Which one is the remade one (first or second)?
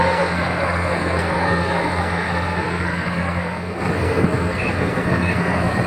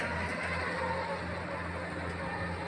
first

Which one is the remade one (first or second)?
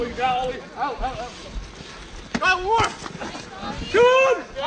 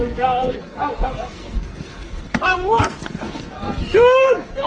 second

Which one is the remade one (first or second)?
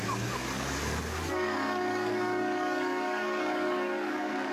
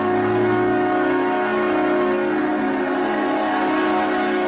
first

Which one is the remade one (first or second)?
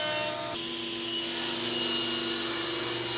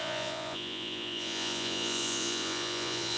second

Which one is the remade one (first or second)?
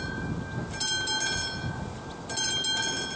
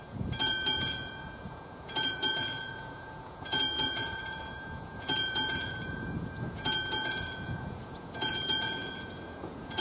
second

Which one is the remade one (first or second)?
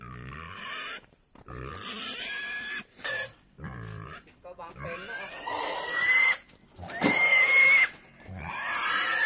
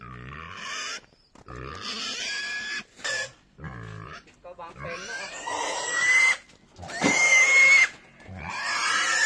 first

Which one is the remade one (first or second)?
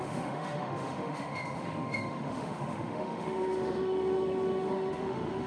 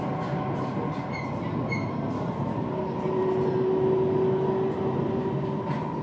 first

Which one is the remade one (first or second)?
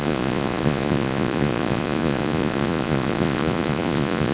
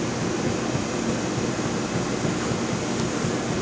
first